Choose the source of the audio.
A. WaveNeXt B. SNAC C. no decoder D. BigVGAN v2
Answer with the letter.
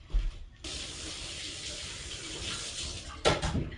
C